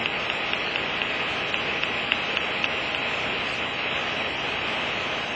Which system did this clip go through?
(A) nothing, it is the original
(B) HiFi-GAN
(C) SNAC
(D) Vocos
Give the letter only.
A